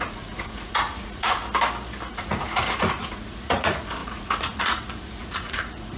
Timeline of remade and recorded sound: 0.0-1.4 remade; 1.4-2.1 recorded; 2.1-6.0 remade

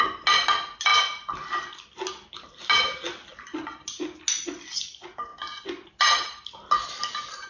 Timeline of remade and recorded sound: 0.0-7.5 recorded

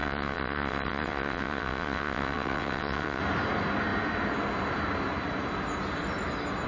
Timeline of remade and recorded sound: 0.0-3.2 remade; 3.2-6.7 recorded

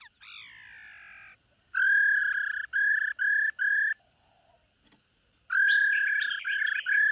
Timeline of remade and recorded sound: 0.0-3.7 recorded; 3.7-4.4 remade; 4.4-7.1 recorded

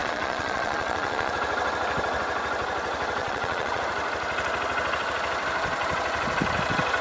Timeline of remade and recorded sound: 0.0-1.3 remade; 1.3-3.2 recorded; 3.2-3.8 remade; 3.8-7.0 recorded